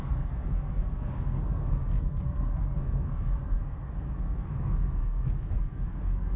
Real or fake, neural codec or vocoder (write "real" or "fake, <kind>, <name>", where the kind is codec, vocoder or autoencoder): fake, codec, SNAC